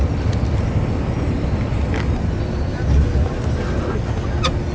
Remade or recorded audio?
recorded